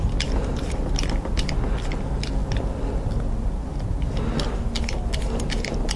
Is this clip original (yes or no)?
yes